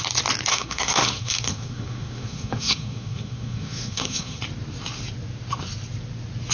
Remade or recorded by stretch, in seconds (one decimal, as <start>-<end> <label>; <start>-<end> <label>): 0.0-0.5 recorded; 0.5-4.4 remade; 4.4-6.5 recorded